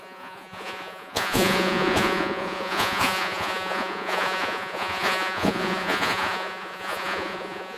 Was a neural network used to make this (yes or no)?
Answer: yes